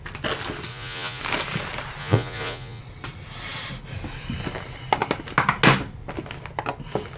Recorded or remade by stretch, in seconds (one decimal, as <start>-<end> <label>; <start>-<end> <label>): 0.0-0.7 recorded; 0.7-1.2 remade; 1.2-2.0 recorded; 2.0-2.8 remade; 2.8-7.2 recorded